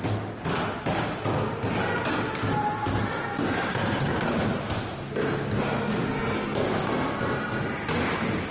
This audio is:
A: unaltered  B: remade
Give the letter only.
A